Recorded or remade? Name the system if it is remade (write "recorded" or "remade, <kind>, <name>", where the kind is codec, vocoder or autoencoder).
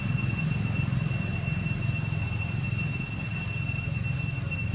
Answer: recorded